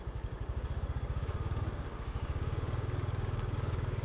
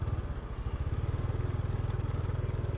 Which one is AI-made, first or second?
first